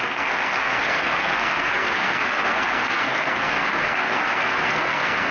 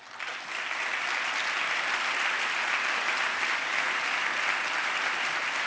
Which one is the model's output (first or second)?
first